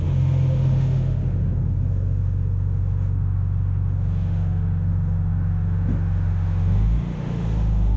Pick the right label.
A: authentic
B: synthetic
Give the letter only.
B